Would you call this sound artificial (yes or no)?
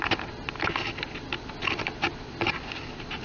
no